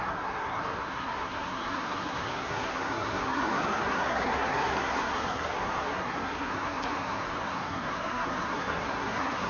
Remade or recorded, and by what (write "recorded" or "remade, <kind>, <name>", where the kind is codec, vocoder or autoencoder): remade, codec, SNAC